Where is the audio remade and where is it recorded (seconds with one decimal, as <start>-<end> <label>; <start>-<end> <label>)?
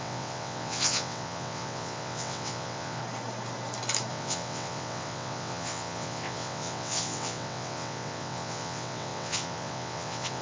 0.0-3.0 remade; 3.0-4.1 recorded; 4.1-10.4 remade